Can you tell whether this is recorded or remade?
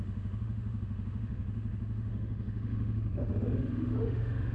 remade